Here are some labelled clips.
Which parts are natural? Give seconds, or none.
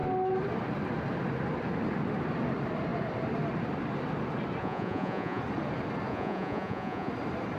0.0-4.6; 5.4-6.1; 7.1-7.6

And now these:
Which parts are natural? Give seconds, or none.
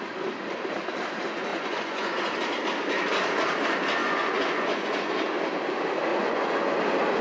0.0-1.5; 2.1-4.0; 5.1-6.1; 6.8-7.2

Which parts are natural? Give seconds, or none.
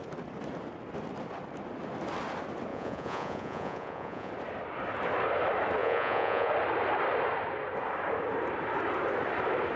0.0-2.7; 4.3-5.8; 6.5-9.8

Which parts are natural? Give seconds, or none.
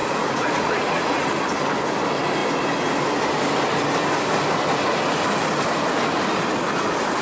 1.3-7.2